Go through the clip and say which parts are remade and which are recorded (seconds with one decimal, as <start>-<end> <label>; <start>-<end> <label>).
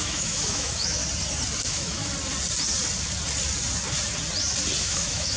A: 0.0-1.0 remade; 1.0-1.6 recorded; 1.6-2.0 remade; 2.0-4.8 recorded; 4.8-5.4 remade